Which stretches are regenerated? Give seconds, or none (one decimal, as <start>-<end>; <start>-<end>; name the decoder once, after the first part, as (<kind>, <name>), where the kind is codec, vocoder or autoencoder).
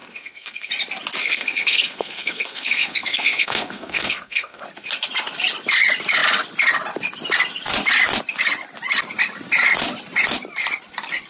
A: 0.0-0.7 (codec, SNAC); 1.2-4.6